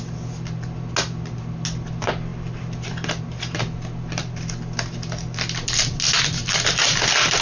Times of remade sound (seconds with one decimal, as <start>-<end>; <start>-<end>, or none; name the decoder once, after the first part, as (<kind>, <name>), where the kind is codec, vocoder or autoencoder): 2.3-3.2 (vocoder, BigVGAN v2)